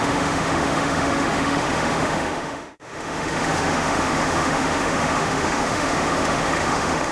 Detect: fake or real fake